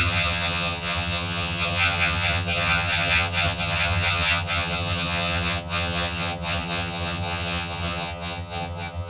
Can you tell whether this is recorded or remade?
remade